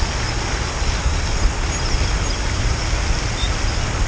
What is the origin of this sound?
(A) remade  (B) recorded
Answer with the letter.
B